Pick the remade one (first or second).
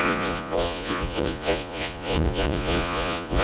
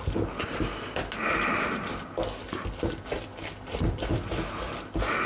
first